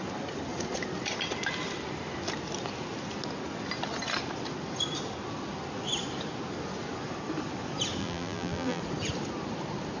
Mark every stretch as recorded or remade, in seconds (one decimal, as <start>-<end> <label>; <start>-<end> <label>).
0.0-8.0 recorded; 8.0-8.8 remade; 8.8-10.0 recorded